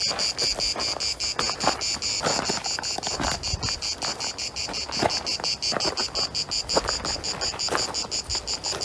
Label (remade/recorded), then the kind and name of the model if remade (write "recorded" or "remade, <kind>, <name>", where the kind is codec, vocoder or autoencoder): recorded